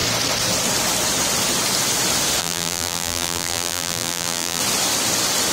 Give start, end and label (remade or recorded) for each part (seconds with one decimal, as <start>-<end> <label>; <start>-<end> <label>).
0.0-2.4 recorded; 2.4-4.6 remade; 4.6-5.5 recorded